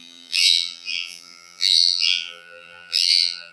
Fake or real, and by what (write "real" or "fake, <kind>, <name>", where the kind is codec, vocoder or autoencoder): fake, vocoder, BigVGAN v2